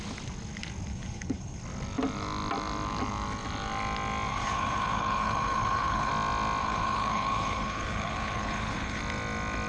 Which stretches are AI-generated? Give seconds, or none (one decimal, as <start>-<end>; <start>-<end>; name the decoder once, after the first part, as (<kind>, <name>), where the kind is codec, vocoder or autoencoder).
0.9-1.6 (codec, HILCodec); 4.3-6.1; 6.6-9.0